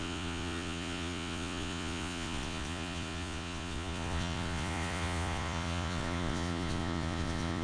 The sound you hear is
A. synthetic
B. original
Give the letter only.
A